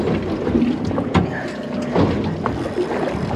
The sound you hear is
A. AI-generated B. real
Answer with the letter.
B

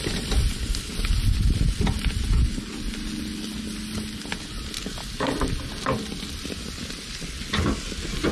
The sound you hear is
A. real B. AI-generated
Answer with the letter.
A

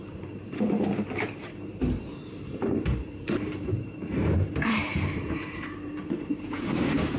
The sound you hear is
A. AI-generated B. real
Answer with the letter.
A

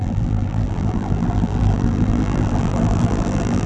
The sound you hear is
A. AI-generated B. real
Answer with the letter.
A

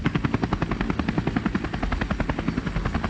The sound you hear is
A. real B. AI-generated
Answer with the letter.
A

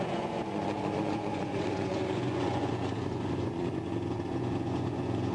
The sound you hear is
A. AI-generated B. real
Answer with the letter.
A